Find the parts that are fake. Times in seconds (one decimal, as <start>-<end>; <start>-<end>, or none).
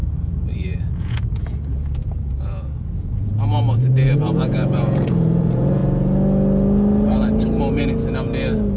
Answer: 0.0-5.8